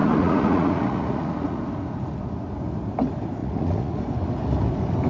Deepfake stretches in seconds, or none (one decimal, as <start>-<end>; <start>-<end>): 0.0-1.6; 3.4-4.0